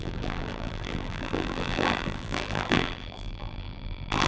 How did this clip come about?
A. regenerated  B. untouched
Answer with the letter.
A